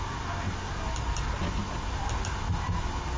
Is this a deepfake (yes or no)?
no